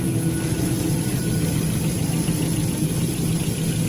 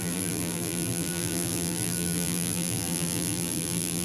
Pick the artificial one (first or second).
second